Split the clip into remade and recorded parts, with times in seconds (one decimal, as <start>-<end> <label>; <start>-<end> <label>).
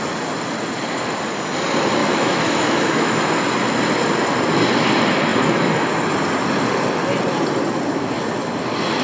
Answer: 0.0-2.0 recorded; 2.0-3.2 remade; 3.2-9.0 recorded